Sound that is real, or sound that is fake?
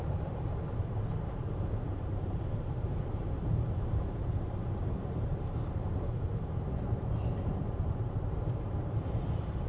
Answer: fake